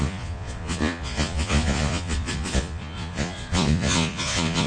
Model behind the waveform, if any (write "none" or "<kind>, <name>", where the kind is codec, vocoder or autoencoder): vocoder, Vocos